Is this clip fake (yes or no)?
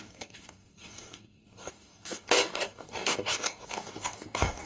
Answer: yes